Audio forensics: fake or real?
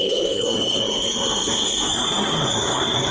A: fake